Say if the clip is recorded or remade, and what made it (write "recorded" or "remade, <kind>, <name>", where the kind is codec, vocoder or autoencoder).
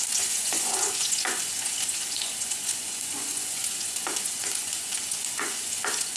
remade, vocoder, Vocos